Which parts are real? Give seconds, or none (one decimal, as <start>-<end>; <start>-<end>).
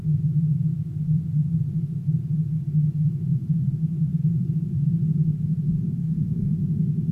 0.0-6.0; 6.5-7.1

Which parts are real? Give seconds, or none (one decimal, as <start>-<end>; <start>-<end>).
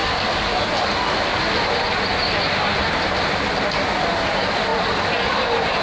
0.0-5.8